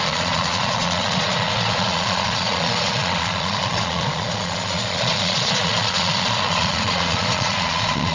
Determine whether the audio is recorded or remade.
remade